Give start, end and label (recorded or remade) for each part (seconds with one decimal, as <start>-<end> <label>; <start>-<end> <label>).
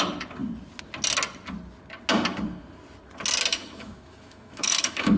0.0-3.5 recorded; 3.5-5.2 remade